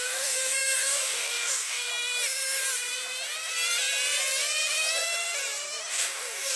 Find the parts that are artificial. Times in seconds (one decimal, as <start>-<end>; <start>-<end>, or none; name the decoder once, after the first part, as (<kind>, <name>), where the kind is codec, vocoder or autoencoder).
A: 0.0-1.9 (codec, DAC); 5.9-6.6